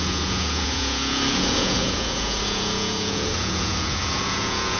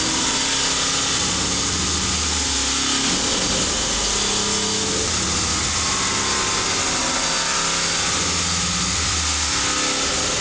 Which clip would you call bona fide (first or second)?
second